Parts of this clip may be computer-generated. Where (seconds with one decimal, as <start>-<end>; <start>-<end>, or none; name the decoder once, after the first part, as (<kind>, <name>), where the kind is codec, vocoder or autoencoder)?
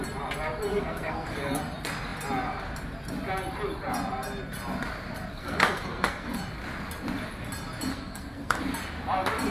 0.7-1.6 (codec, SNAC); 5.3-6.4; 7.9-8.6